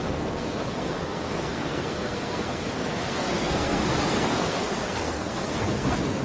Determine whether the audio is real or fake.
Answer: fake